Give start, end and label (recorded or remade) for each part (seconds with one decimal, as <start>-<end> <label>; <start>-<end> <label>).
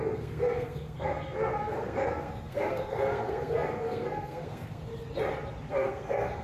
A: 0.0-4.9 remade; 4.9-5.7 recorded; 5.7-6.4 remade